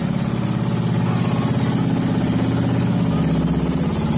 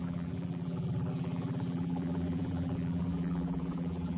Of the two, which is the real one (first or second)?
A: first